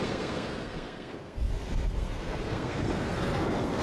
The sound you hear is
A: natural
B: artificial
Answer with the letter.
B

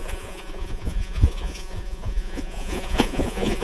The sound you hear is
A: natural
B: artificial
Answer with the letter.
B